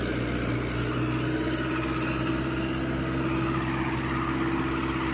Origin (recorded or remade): recorded